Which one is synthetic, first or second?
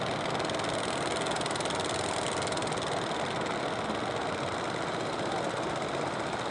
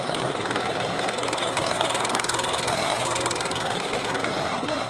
second